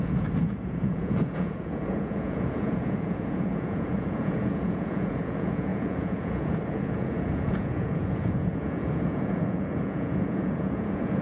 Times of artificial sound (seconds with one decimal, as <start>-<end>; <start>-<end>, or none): 0.0-11.2